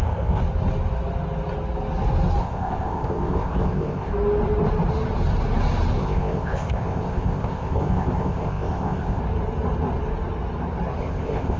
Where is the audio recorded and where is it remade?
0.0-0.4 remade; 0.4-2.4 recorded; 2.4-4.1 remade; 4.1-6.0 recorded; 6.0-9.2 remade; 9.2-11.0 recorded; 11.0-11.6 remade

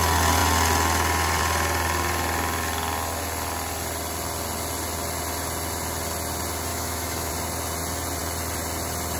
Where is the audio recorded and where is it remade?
0.0-6.7 recorded; 6.7-7.3 remade; 7.3-9.2 recorded

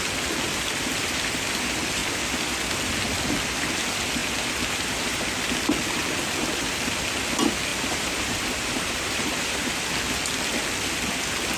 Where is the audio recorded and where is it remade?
0.0-7.7 recorded; 7.7-9.7 remade; 9.7-11.6 recorded

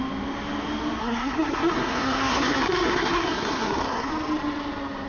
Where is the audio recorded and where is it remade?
0.0-1.0 recorded; 1.0-4.1 remade; 4.1-5.1 recorded

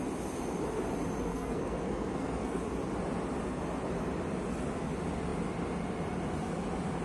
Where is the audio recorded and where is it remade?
0.0-1.3 recorded; 1.3-2.6 remade; 2.6-7.0 recorded

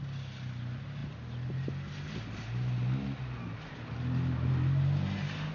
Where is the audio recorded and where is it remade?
0.0-5.5 recorded

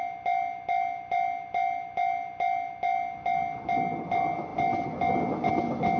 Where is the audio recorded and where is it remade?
0.0-6.0 recorded